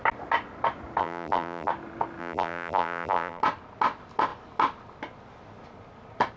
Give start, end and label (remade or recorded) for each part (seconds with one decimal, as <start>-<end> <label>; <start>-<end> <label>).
0.0-1.0 recorded; 1.0-1.7 remade; 1.7-2.2 recorded; 2.2-3.4 remade; 3.4-6.4 recorded